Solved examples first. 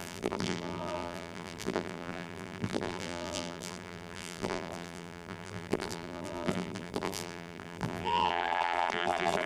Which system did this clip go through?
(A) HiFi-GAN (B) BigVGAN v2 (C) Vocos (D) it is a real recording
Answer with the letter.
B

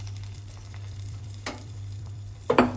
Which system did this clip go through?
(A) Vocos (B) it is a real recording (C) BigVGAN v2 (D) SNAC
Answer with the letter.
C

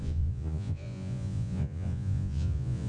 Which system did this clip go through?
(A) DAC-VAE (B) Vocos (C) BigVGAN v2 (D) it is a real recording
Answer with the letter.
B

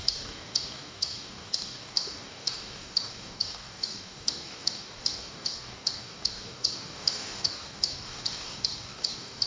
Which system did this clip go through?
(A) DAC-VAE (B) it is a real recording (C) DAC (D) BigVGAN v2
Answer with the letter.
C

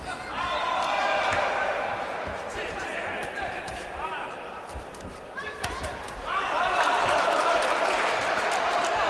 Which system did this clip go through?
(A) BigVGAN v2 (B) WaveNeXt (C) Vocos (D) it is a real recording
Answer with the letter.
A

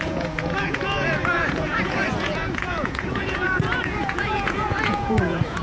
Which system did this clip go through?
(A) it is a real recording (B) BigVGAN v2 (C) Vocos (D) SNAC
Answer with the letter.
C